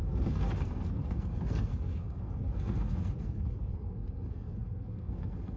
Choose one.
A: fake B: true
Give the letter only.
A